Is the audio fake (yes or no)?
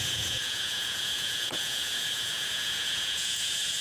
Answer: yes